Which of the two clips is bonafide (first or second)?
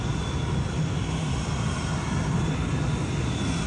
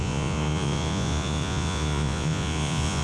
first